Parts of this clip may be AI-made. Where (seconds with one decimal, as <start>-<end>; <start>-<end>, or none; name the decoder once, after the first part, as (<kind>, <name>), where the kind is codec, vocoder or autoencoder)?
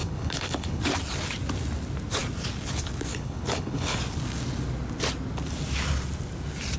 0.0-0.8 (codec, HILCodec); 3.1-4.0